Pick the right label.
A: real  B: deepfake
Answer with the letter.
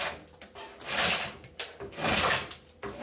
A